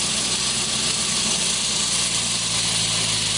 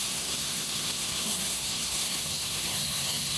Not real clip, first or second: second